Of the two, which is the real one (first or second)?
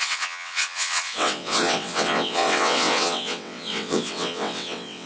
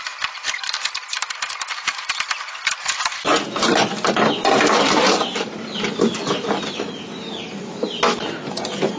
second